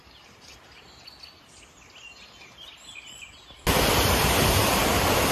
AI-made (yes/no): no